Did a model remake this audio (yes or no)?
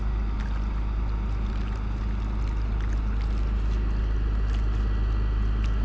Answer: no